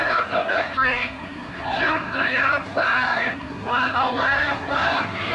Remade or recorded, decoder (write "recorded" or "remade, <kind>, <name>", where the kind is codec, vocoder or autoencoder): remade, codec, SNAC